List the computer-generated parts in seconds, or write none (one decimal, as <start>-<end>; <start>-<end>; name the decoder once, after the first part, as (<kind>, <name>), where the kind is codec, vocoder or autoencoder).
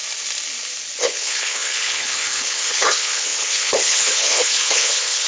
1.0-5.3 (codec, HILCodec)